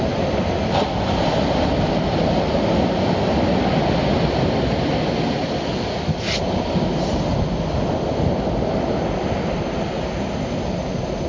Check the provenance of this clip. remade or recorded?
recorded